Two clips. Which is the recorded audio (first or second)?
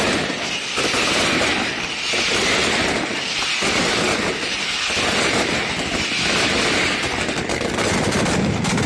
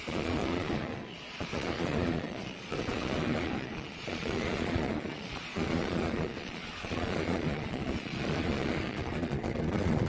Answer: first